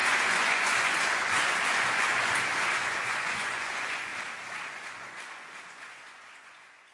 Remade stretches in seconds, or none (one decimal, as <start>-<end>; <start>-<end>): 0.0-4.1; 4.7-6.9